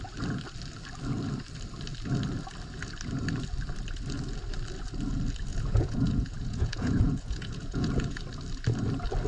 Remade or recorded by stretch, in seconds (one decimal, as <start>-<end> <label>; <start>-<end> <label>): 0.0-5.5 recorded; 5.5-8.2 remade; 8.2-9.3 recorded